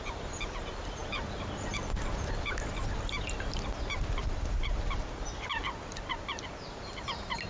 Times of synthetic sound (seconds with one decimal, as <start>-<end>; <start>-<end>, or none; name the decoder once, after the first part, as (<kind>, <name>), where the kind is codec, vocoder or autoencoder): none

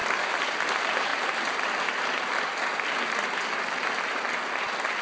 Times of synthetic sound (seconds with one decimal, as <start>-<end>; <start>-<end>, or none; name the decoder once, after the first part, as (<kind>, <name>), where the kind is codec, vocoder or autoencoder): none

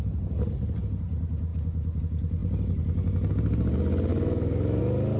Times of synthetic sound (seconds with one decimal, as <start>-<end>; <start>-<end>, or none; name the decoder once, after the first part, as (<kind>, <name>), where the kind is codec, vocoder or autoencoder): 4.1-4.8 (autoencoder, DAC-VAE)

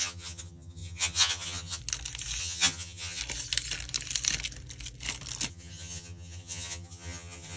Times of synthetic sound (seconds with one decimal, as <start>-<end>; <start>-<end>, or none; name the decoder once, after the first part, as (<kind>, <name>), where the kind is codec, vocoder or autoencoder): 0.0-1.8 (vocoder, HiFi-GAN); 2.4-3.2; 5.5-7.6

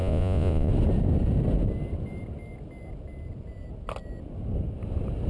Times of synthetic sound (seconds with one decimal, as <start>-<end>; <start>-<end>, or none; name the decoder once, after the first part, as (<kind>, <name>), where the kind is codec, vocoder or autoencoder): 0.0-0.7 (vocoder, Vocos)

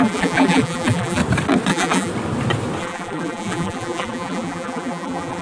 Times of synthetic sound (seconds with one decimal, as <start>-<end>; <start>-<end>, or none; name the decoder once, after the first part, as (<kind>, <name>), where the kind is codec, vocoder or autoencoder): 0.0-1.2 (vocoder, BigVGAN v2); 1.7-2.1; 2.8-5.4